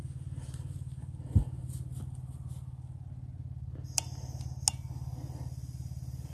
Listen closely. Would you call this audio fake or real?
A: real